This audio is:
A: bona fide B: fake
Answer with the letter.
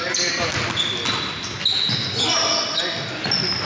A